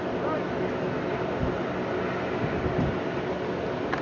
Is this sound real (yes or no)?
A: yes